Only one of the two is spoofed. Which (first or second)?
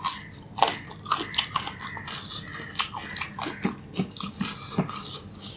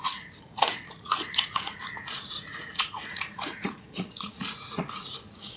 second